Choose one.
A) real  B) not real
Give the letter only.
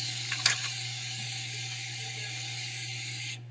B